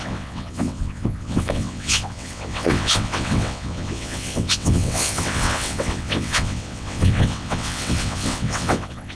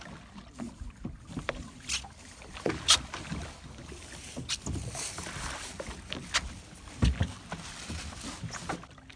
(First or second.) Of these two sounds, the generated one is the first